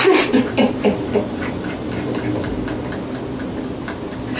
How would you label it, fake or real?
real